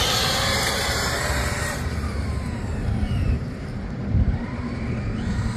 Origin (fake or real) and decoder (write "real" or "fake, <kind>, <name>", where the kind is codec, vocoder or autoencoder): fake, vocoder, BigVGAN v2